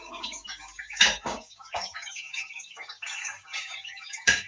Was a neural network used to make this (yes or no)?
yes